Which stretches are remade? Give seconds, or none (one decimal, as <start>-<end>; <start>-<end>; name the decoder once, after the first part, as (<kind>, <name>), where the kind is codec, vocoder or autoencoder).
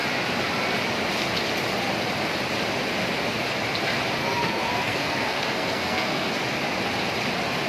4.2-6.3 (codec, SNAC)